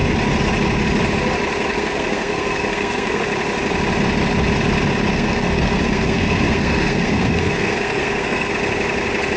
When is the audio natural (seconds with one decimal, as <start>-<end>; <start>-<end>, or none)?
0.0-1.7; 3.2-5.1; 8.5-9.4